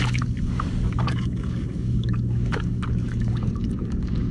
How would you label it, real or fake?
fake